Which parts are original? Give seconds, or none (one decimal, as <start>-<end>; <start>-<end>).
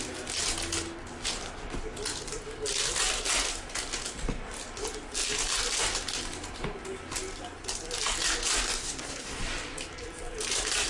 0.0-8.8; 9.4-10.9